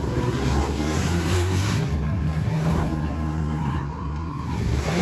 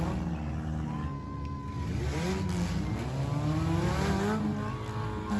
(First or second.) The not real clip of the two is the first